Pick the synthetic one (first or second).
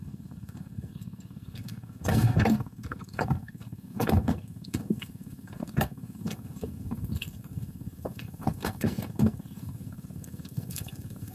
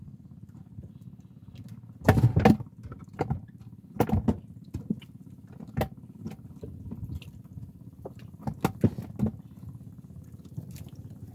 first